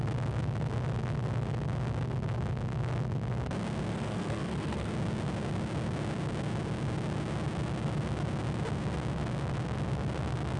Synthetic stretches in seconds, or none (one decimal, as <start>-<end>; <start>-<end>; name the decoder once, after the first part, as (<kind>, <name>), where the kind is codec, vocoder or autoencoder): 3.9-4.9 (codec, SNAC)